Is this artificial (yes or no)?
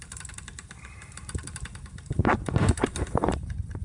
yes